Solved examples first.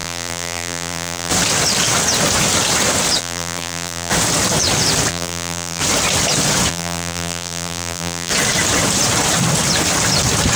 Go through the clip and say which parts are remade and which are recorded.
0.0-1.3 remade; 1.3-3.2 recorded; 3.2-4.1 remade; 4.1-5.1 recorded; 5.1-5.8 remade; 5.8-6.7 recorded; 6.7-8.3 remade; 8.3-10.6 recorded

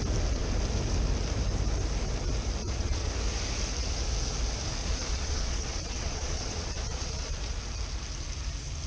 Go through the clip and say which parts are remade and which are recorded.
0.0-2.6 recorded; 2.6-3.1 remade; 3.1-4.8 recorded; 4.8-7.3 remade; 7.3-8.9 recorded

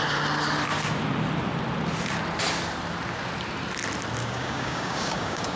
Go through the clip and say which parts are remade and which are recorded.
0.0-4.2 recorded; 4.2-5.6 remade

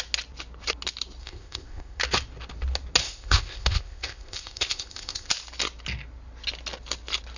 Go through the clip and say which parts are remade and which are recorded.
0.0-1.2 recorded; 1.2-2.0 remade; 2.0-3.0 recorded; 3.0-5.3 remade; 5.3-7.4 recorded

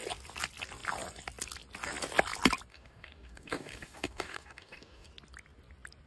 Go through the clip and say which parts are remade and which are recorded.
0.0-2.7 recorded; 2.7-5.1 remade; 5.1-6.1 recorded

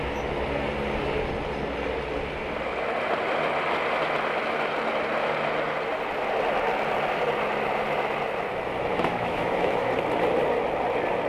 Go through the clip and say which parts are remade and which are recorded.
0.0-8.9 recorded; 8.9-9.9 remade; 9.9-11.3 recorded